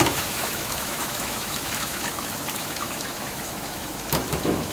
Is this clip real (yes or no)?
no